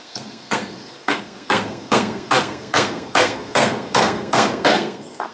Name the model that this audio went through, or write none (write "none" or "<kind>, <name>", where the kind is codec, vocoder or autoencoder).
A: codec, SNAC